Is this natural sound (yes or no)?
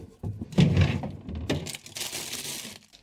yes